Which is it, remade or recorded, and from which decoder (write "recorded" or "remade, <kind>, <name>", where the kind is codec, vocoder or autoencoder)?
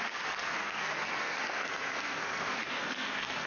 remade, codec, SNAC